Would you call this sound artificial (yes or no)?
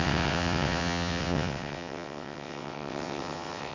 yes